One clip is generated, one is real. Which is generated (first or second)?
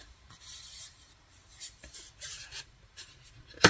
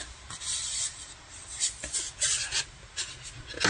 first